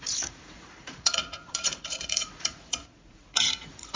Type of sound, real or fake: fake